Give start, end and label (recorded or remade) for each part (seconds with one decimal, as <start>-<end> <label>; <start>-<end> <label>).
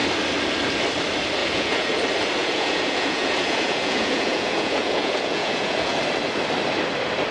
0.0-1.4 recorded; 1.4-2.0 remade; 2.0-2.4 recorded; 2.4-6.0 remade; 6.0-7.3 recorded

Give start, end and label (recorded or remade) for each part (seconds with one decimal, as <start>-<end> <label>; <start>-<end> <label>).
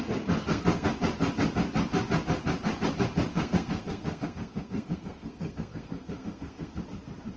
0.0-0.4 recorded; 0.4-0.9 remade; 0.9-3.3 recorded; 3.3-6.8 remade; 6.8-7.4 recorded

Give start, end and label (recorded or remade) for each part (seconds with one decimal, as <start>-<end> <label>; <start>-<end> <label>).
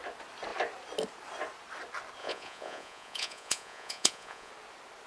0.0-2.2 recorded; 2.2-4.5 remade; 4.5-5.1 recorded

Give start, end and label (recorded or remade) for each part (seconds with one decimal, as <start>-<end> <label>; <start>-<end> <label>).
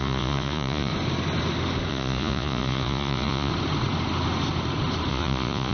0.0-0.9 remade; 0.9-1.9 recorded; 1.9-3.5 remade; 3.5-5.1 recorded; 5.1-5.7 remade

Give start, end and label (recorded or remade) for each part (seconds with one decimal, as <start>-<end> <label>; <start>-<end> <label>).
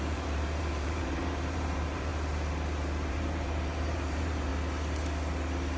0.0-2.1 remade; 2.1-3.1 recorded; 3.1-4.5 remade; 4.5-5.8 recorded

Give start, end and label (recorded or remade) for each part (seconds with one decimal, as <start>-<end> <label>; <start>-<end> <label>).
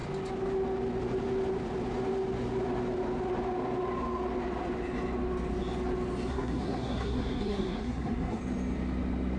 0.0-6.3 recorded; 6.3-8.4 remade; 8.4-9.4 recorded